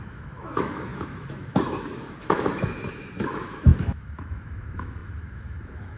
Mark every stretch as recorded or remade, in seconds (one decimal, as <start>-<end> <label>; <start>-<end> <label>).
0.0-6.0 remade